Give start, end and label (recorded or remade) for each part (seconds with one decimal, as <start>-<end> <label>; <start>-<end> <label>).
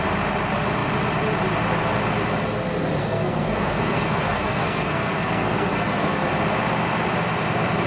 0.0-3.0 recorded; 3.0-6.3 remade; 6.3-7.9 recorded